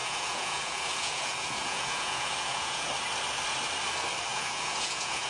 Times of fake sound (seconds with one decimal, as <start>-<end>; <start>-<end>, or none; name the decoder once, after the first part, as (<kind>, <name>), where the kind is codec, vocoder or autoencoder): 0.0-2.9 (vocoder, Vocos); 4.3-5.3

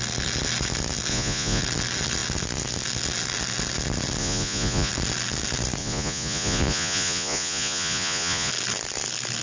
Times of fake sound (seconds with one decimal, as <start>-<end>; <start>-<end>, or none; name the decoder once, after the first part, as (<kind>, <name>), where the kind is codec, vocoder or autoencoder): 1.1-1.6 (vocoder, Vocos); 4.2-4.9; 5.8-8.5